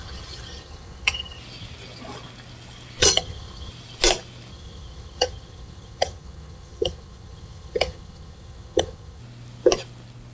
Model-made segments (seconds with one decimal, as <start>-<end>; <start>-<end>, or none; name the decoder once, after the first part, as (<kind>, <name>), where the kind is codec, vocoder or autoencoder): 0.0-1.4 (vocoder, HiFi-GAN); 3.0-3.7; 4.5-9.2